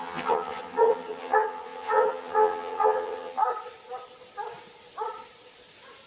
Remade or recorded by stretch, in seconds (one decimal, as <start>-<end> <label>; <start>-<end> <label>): 0.0-3.4 remade; 3.4-6.1 recorded